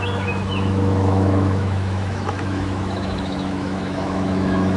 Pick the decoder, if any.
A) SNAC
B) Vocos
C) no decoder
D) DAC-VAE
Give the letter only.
D